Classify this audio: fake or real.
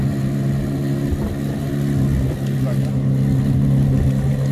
real